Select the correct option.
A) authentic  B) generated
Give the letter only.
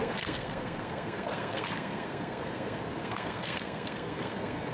B